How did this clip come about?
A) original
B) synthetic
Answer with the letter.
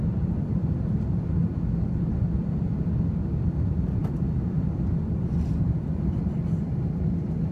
A